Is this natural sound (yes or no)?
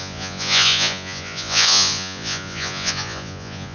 no